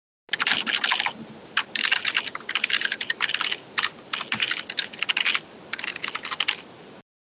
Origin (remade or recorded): recorded